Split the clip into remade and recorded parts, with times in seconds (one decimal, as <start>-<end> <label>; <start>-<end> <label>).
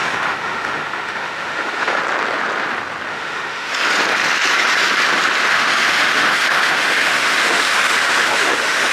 0.0-2.0 remade; 2.0-3.1 recorded; 3.1-3.7 remade; 3.7-5.4 recorded; 5.4-8.9 remade